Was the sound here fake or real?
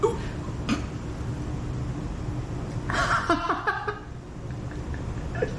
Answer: real